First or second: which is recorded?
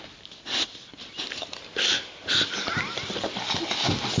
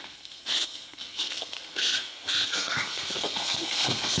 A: first